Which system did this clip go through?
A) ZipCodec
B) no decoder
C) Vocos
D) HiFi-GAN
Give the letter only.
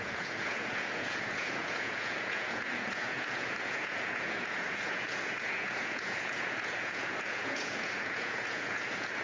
C